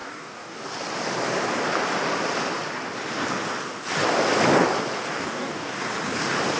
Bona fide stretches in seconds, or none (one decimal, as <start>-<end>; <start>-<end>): 0.7-5.1; 5.8-6.6